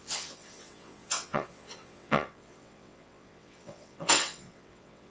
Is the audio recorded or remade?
remade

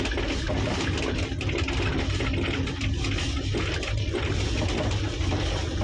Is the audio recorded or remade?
recorded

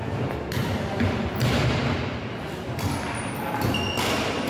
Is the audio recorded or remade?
recorded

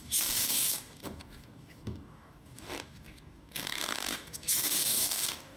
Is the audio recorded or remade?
remade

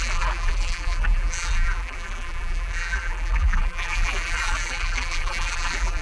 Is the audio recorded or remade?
remade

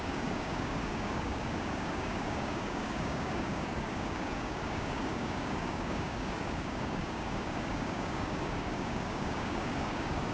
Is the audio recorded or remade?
remade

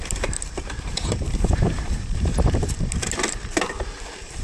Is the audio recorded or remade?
remade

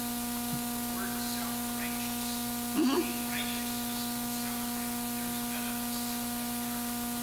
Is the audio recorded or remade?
recorded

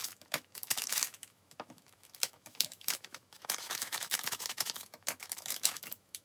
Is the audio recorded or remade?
remade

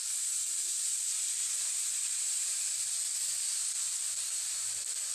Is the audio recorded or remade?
recorded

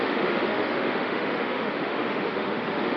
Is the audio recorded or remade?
remade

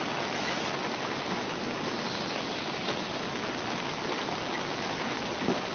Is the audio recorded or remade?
recorded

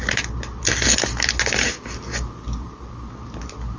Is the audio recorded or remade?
recorded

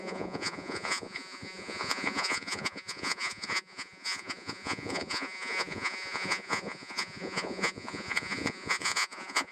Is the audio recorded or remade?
remade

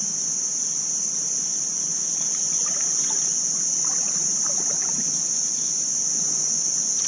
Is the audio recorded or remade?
recorded